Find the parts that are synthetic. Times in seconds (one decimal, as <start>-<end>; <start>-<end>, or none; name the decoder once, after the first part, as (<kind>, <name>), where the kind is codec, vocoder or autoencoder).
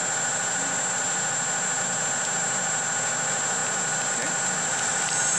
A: none